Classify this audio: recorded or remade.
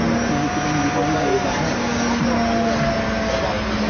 recorded